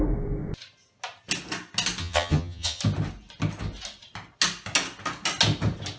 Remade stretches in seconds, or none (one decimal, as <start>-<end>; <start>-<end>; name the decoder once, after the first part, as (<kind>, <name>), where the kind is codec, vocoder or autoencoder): 2.0-2.8 (vocoder, HiFi-GAN)